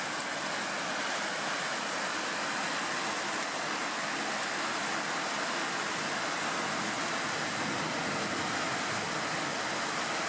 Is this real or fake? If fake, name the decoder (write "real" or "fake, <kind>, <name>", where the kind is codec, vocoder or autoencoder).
real